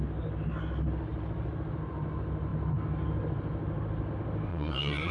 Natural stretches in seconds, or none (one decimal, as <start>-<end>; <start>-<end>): 0.0-4.5